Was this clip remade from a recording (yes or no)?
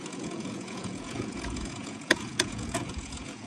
yes